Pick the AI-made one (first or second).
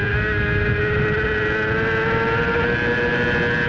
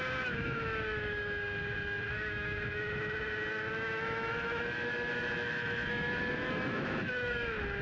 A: second